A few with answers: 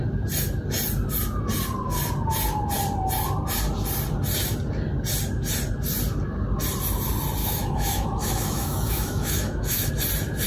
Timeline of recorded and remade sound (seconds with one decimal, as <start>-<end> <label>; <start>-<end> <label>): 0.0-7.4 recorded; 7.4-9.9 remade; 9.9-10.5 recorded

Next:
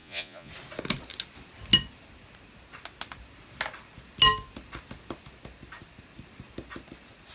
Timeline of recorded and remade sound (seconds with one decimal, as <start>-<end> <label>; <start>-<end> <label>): 0.0-0.5 remade; 0.5-7.3 recorded

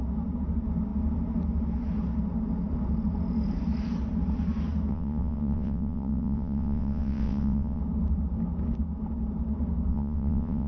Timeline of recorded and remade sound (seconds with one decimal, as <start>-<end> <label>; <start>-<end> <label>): 0.0-4.9 recorded; 4.9-7.8 remade; 7.8-9.9 recorded; 9.9-10.7 remade

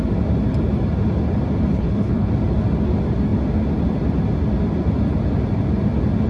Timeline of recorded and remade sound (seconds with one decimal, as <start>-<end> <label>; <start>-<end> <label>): 0.0-1.7 recorded; 1.7-2.3 remade; 2.3-6.3 recorded

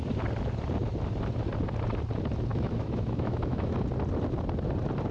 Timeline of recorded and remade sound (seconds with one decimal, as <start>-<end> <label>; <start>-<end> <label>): 0.0-2.5 recorded; 2.5-3.8 remade; 3.8-5.1 recorded

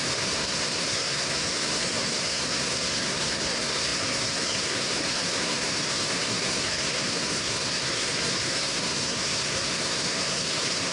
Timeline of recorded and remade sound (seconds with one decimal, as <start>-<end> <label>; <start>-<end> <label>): 0.0-10.9 remade

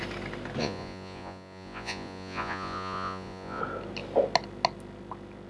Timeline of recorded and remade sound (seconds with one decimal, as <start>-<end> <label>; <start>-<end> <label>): 0.0-0.6 recorded; 0.6-3.6 remade; 3.6-5.5 recorded

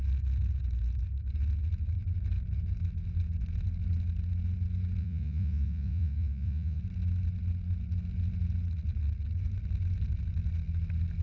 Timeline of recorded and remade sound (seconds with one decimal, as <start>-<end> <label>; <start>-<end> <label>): 0.0-5.0 recorded; 5.0-6.8 remade; 6.8-11.2 recorded